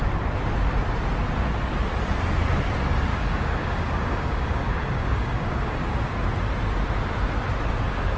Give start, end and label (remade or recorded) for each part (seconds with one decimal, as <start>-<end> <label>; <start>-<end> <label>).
0.0-3.1 recorded; 3.1-6.1 remade; 6.1-8.2 recorded